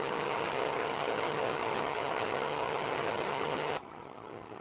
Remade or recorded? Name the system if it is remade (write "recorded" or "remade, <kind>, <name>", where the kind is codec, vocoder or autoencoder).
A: remade, vocoder, HiFi-GAN